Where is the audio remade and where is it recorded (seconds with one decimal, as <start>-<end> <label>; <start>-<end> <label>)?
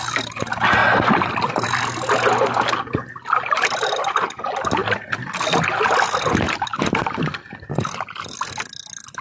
0.0-9.2 recorded